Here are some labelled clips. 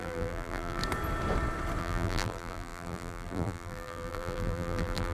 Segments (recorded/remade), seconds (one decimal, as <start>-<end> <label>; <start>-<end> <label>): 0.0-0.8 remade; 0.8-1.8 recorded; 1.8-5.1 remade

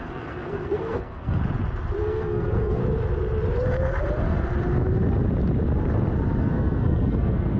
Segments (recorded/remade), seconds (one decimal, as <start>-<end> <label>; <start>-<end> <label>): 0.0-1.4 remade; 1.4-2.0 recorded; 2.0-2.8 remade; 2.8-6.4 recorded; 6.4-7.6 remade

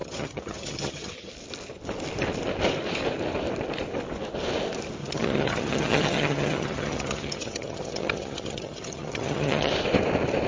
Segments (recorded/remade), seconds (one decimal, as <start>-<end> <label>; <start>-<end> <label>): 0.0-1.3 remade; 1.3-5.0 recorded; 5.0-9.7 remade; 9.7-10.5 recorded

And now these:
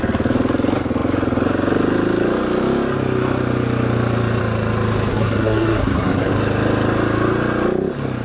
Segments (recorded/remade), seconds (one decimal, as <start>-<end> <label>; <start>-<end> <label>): 0.0-5.1 recorded; 5.1-6.3 remade; 6.3-8.2 recorded